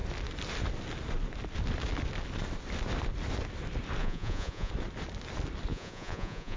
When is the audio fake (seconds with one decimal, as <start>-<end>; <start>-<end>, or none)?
4.0-4.7; 5.7-6.6